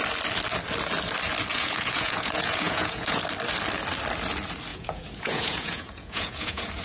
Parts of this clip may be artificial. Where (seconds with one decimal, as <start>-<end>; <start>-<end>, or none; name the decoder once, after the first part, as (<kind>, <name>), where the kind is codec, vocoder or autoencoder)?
1.5-3.2 (vocoder, Vocos); 4.7-6.8